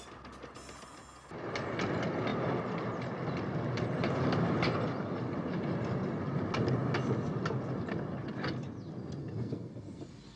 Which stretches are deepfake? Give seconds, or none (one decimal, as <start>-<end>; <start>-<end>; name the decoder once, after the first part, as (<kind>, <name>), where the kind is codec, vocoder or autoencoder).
9.2-10.0 (codec, SNAC)